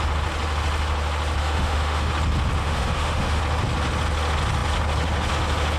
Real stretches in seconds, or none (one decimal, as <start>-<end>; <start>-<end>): 0.0-1.4; 2.1-2.6; 3.4-5.8

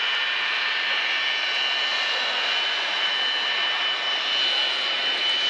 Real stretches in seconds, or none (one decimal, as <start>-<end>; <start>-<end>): 0.0-1.9; 3.1-5.5